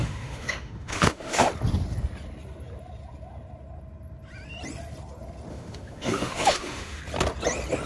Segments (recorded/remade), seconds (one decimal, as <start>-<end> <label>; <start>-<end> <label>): 0.0-1.5 remade; 1.5-5.5 recorded; 5.5-7.0 remade; 7.0-7.9 recorded